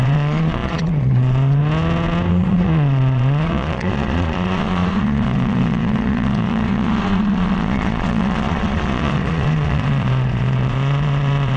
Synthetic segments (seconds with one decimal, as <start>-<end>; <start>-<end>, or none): 0.0-1.6; 2.3-11.6